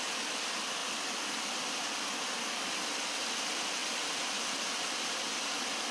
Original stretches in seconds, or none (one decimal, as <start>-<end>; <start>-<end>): 0.0-5.9